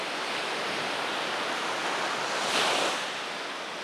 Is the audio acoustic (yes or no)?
yes